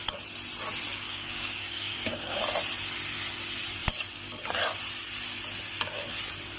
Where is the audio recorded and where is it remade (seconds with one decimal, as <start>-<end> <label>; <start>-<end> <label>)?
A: 0.0-0.9 recorded; 0.9-2.4 remade; 2.4-6.6 recorded